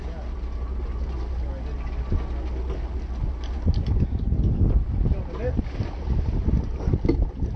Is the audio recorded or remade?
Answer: recorded